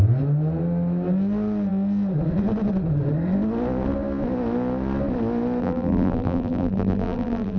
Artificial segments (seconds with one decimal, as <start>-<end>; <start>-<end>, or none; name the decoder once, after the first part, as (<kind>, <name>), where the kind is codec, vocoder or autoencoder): 5.6-7.6 (vocoder, BigVGAN v2)